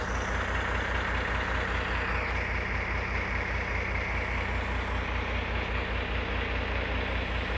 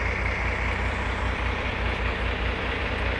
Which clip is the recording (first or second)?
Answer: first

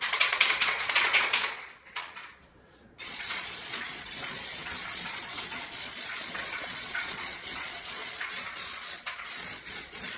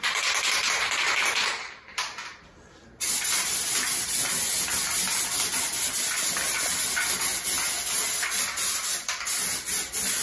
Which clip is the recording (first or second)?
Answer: second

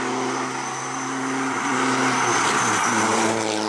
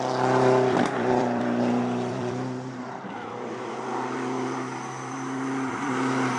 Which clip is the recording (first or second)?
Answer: first